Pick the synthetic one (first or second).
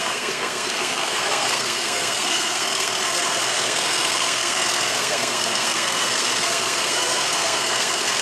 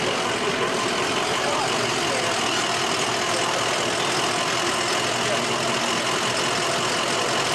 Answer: first